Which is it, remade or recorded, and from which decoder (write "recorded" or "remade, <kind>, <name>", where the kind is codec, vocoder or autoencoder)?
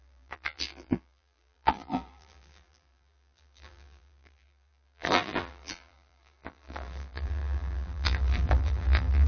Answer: remade, vocoder, BigVGAN v2